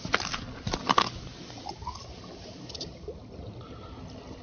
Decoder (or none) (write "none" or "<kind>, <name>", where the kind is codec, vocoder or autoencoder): none